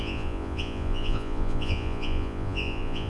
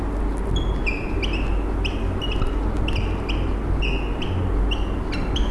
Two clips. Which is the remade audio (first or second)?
first